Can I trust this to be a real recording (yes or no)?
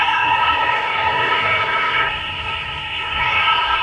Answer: no